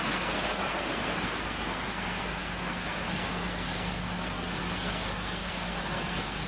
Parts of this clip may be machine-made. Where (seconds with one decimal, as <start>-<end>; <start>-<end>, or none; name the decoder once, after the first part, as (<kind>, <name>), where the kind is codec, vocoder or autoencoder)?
0.0-6.5 (codec, SNAC)